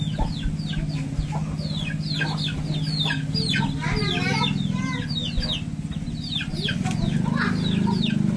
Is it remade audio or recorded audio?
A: recorded